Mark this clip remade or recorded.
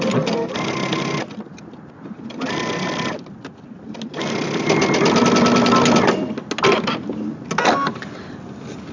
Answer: recorded